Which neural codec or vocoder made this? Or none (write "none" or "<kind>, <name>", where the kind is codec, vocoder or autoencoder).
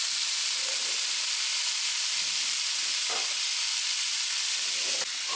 none